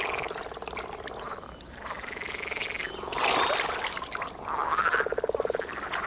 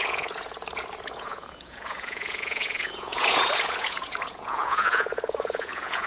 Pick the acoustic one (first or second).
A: first